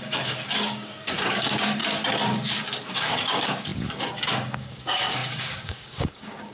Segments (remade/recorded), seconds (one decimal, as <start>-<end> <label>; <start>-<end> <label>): 0.0-1.8 remade; 1.8-2.9 recorded; 2.9-6.5 remade